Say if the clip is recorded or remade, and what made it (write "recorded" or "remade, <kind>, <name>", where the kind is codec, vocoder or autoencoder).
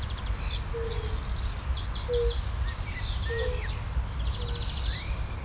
recorded